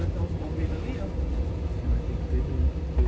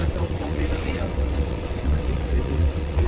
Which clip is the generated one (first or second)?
second